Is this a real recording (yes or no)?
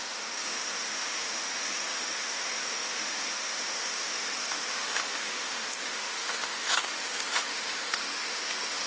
no